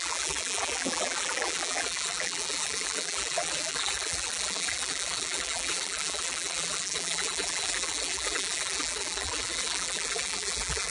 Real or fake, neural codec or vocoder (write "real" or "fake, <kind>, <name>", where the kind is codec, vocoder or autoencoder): fake, vocoder, BigVGAN v2